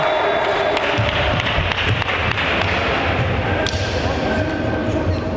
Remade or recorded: recorded